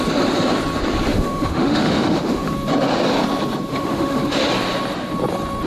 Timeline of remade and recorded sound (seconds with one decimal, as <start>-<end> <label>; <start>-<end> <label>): 0.0-1.1 recorded; 1.1-2.5 remade; 2.5-3.7 recorded; 3.7-4.5 remade; 4.5-5.7 recorded